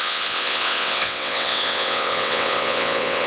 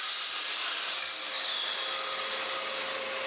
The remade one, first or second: first